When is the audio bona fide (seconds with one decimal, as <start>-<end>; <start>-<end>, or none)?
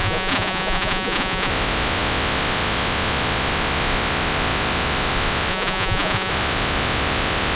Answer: 1.5-5.5; 6.3-7.6